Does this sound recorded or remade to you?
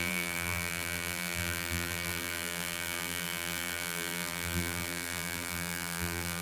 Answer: remade